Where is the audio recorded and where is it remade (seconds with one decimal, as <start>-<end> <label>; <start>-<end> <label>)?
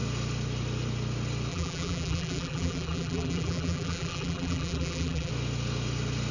0.0-1.5 recorded; 1.5-5.3 remade; 5.3-6.3 recorded